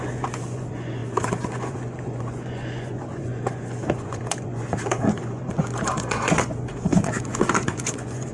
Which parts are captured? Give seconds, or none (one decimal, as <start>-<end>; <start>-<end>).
none

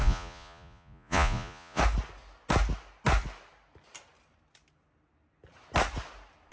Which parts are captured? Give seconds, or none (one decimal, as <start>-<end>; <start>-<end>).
1.8-6.5

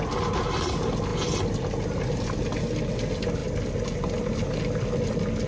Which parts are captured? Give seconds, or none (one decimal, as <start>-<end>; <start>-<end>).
0.0-5.5

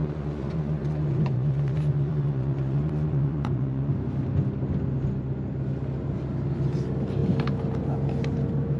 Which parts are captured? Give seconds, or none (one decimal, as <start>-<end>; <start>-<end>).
3.9-8.8

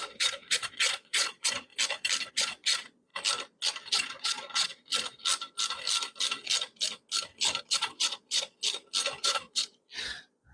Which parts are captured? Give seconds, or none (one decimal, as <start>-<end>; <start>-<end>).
1.7-2.3; 3.1-3.9; 4.9-7.6; 8.6-9.2

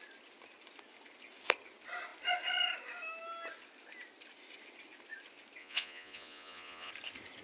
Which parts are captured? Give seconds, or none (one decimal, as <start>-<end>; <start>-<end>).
0.0-5.6; 6.9-7.4

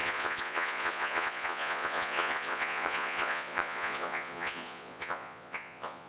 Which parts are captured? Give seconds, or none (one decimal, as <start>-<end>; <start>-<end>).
none